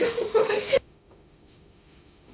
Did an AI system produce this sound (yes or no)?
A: yes